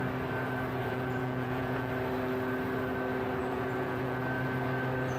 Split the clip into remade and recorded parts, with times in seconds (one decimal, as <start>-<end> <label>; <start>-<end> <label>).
0.0-0.8 recorded; 0.8-1.9 remade; 1.9-3.4 recorded; 3.4-4.2 remade; 4.2-5.2 recorded